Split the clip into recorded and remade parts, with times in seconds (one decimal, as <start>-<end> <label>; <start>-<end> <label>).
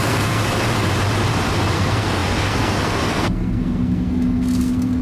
0.0-0.4 remade; 0.4-1.7 recorded; 1.7-5.0 remade